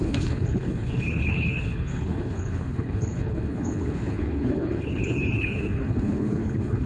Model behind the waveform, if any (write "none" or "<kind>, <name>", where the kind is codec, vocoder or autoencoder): codec, HILCodec